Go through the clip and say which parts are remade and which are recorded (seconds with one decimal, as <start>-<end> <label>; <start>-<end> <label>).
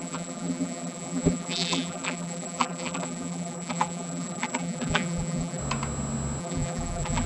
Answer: 0.0-5.6 remade; 5.6-6.4 recorded; 6.4-7.3 remade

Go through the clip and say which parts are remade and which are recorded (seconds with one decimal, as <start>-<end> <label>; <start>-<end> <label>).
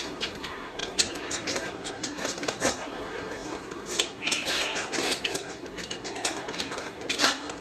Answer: 0.0-7.6 remade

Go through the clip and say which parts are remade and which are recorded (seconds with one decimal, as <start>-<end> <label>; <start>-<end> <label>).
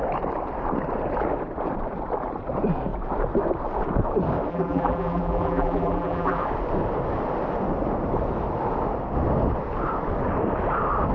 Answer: 0.0-4.5 recorded; 4.5-6.4 remade; 6.4-11.1 recorded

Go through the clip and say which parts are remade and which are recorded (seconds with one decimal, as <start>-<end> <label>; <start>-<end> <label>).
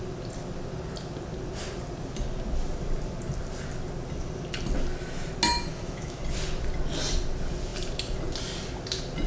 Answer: 0.0-5.7 recorded; 5.7-6.2 remade; 6.2-9.3 recorded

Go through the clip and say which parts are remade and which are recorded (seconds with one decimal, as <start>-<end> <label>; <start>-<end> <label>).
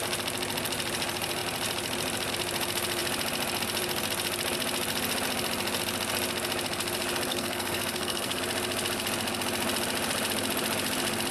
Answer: 0.0-7.3 recorded; 7.3-8.4 remade; 8.4-11.3 recorded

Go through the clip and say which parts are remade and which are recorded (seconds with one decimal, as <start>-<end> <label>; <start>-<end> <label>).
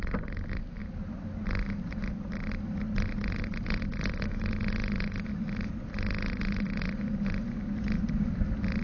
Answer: 0.0-8.8 recorded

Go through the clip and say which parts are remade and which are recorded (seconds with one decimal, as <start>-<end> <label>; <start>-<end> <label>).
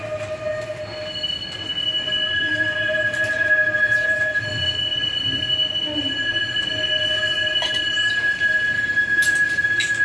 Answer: 0.0-10.0 recorded